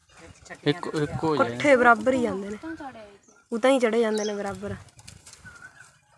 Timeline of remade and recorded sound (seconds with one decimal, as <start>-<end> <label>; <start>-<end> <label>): 0.0-0.8 recorded; 0.8-1.5 remade; 1.5-5.2 recorded; 5.2-6.2 remade